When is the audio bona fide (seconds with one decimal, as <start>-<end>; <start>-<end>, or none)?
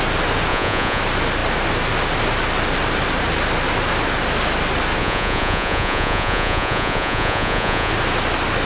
0.0-0.5; 1.0-5.0; 7.9-8.7